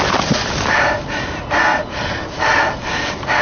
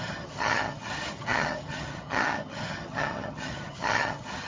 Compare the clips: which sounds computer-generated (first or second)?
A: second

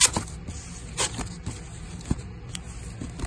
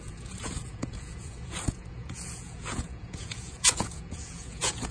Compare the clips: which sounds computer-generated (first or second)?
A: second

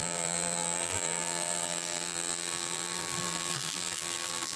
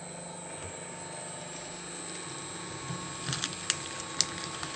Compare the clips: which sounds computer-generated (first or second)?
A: first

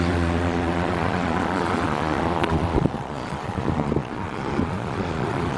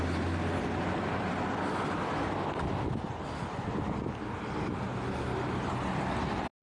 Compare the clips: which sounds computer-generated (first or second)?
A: first